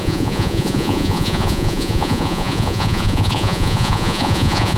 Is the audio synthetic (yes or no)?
yes